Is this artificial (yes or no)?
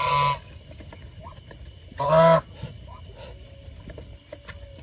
no